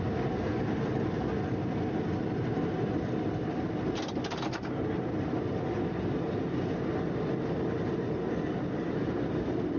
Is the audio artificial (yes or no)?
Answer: no